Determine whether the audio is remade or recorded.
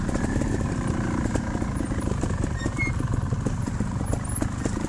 recorded